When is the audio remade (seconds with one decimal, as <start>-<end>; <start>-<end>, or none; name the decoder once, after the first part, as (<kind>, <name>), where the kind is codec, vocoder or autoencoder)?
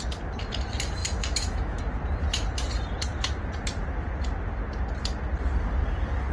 1.0-1.8 (autoencoder, DAC-VAE)